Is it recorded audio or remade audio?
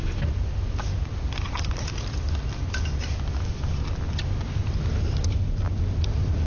recorded